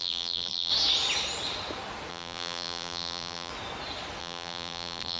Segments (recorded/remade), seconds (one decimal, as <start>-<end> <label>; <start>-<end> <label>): 0.0-0.7 remade; 0.7-2.1 recorded; 2.1-3.5 remade; 3.5-4.2 recorded; 4.2-5.2 remade